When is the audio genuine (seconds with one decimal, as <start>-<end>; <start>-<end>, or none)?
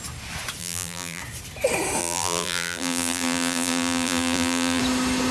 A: 0.0-0.6; 1.2-2.0; 4.8-5.3